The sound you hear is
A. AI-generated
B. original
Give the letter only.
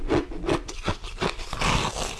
B